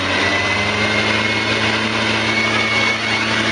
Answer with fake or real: real